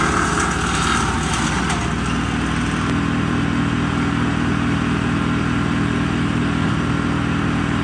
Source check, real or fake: real